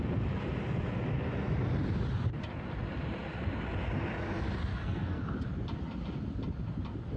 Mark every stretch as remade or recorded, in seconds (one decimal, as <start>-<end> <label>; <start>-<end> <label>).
0.0-4.7 recorded; 4.7-5.2 remade; 5.2-7.2 recorded